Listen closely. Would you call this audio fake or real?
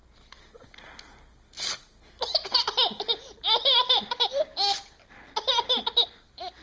real